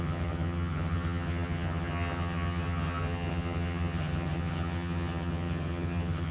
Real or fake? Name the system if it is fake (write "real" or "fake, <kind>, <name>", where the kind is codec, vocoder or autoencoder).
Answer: fake, vocoder, HiFi-GAN